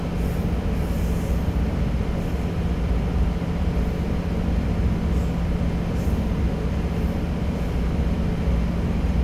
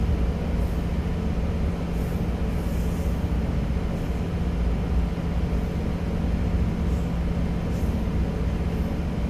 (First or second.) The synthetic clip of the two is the first